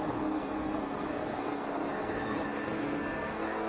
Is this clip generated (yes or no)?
yes